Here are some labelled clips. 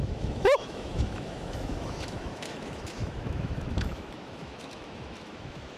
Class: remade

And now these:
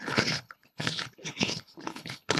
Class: remade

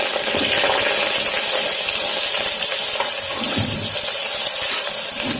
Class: recorded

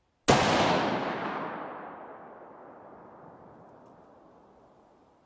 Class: recorded